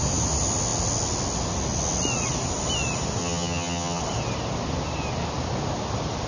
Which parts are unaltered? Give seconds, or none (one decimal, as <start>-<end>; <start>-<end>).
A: 0.0-3.2; 4.0-6.3